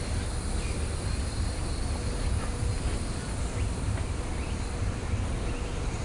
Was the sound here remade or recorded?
recorded